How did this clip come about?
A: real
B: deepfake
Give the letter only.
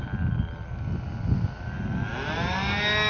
A